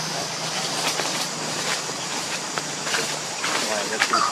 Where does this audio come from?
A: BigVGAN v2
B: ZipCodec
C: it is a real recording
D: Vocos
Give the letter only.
C